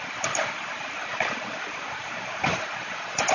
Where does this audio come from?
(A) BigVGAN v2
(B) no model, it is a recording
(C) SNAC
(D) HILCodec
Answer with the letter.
A